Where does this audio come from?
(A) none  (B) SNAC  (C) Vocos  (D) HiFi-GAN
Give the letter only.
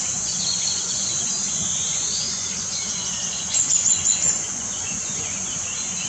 C